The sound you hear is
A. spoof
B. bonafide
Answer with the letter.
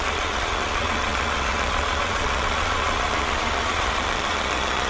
A